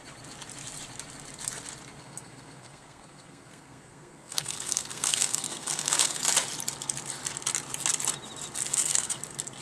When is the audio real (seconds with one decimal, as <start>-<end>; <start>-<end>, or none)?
0.0-2.0; 6.2-8.7; 9.2-9.6